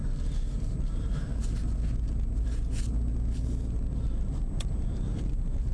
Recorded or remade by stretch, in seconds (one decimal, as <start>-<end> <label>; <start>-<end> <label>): 0.0-5.7 recorded